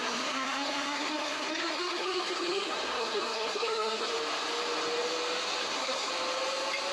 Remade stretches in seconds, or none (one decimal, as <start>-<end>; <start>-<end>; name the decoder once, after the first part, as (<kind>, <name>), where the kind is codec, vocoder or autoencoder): 0.0-4.1 (codec, SNAC); 5.6-6.1